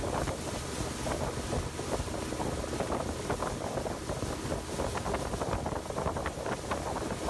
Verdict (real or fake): real